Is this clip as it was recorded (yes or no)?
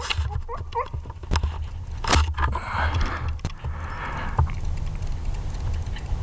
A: yes